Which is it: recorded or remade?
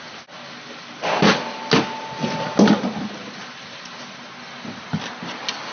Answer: recorded